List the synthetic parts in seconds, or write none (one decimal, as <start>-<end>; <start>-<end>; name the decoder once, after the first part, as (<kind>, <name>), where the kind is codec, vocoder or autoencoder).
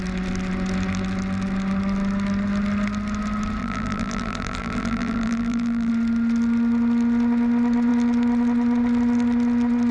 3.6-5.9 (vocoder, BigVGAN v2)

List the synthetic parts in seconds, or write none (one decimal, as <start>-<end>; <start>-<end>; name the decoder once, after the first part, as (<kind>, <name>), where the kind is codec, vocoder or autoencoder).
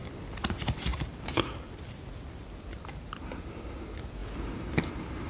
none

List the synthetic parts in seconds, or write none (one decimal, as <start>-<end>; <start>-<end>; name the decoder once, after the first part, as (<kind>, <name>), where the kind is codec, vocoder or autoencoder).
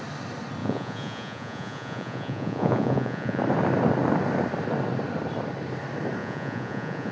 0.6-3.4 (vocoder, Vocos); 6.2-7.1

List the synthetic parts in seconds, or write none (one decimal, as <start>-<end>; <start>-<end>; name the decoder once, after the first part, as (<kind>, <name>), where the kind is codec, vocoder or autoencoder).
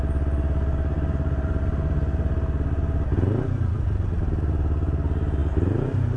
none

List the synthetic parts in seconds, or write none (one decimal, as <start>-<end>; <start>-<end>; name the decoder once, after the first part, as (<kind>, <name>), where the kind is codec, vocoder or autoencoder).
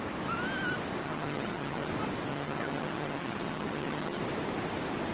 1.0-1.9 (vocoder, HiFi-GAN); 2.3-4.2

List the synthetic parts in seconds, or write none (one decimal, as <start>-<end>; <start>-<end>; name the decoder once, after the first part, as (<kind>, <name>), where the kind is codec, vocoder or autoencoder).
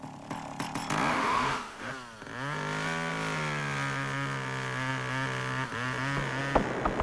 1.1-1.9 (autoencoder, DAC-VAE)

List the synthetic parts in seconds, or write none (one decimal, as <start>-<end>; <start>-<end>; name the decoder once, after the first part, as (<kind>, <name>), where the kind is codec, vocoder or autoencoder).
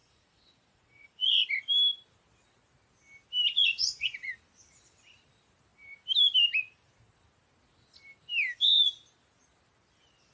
0.0-1.5 (vocoder, Vocos); 3.5-4.3